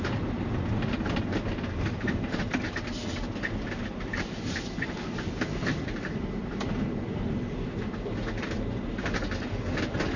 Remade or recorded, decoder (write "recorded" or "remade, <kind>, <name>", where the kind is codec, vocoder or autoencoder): recorded